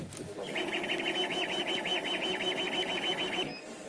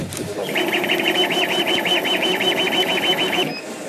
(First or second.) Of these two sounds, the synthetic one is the second